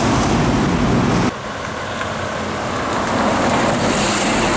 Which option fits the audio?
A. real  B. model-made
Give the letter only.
A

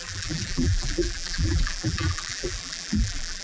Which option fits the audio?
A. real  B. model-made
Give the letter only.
B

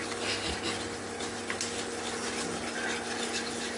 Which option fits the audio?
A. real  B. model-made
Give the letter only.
A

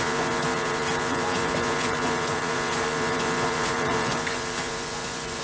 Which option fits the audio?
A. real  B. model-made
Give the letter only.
B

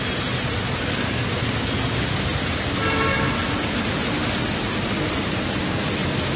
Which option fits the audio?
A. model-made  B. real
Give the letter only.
B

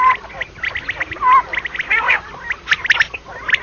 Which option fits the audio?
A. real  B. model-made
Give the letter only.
A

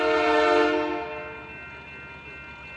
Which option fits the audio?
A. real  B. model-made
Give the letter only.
A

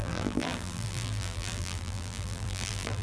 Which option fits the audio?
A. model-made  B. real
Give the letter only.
A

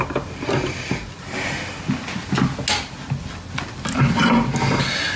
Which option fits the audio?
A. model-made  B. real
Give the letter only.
B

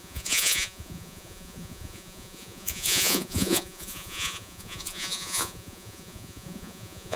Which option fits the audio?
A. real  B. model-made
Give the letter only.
B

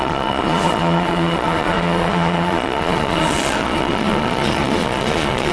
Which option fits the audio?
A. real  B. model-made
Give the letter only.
B